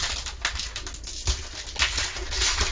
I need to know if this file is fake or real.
real